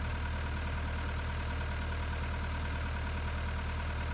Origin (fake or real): real